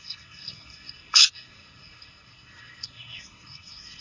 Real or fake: fake